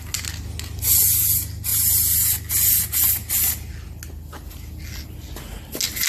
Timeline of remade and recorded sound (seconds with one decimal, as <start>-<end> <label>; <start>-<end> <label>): 0.0-6.1 recorded